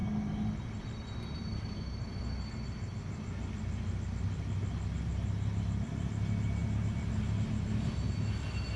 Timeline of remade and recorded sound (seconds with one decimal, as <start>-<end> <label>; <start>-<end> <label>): 0.0-8.8 recorded